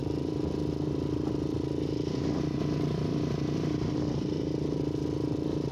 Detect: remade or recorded remade